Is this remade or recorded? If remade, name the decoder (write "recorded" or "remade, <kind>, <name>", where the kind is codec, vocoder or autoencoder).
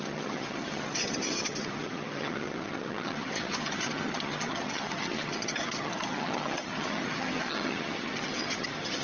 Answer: remade, vocoder, HiFi-GAN